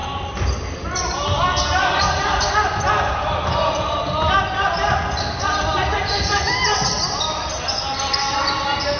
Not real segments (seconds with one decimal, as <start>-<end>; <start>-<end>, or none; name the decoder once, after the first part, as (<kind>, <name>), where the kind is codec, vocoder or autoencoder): none